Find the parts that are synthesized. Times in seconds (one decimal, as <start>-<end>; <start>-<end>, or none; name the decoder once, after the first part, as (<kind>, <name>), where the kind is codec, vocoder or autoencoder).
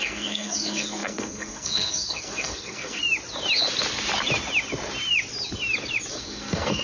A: 0.0-3.0 (codec, SNAC); 6.1-6.8